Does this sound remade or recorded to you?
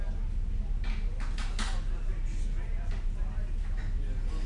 recorded